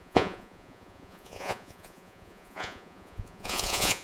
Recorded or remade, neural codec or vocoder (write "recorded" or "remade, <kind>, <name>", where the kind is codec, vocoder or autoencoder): remade, vocoder, Vocos